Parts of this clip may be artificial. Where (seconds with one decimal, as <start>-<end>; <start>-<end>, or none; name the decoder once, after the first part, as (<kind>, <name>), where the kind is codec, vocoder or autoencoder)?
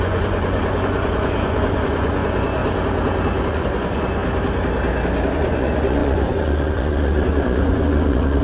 0.0-2.6 (vocoder, Vocos); 3.5-4.2; 5.3-8.4